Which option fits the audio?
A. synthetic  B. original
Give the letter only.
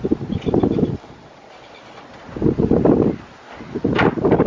B